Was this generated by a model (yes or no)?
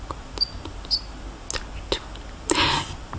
no